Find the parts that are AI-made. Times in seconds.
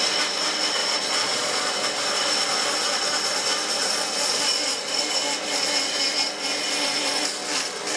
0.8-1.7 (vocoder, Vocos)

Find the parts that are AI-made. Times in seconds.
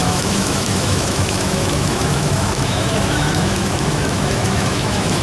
0.0-5.2 (autoencoder, DAC-VAE)